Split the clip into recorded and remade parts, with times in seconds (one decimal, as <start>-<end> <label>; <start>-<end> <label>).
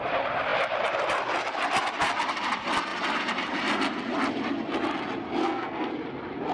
0.0-5.4 recorded; 5.4-5.9 remade; 5.9-6.5 recorded